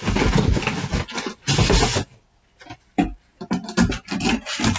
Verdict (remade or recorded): recorded